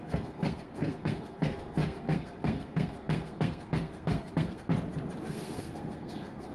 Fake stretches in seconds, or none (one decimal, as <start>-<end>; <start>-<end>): 0.0-4.7; 5.3-6.5